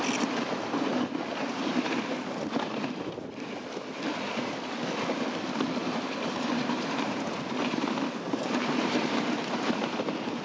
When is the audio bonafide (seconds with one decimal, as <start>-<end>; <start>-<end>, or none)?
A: 0.0-5.8; 10.0-10.4

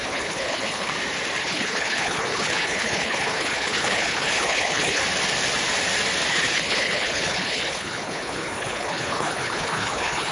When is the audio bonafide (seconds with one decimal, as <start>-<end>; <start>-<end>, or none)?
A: 0.9-1.4; 5.0-6.3